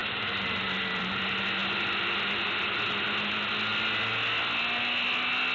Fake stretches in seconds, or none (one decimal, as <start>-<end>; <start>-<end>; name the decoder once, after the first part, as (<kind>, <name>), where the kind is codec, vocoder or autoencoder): none